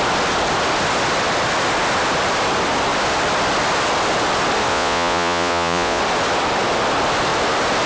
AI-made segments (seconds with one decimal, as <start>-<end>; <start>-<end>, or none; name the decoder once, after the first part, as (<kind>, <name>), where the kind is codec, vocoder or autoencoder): 4.7-6.0 (vocoder, Vocos)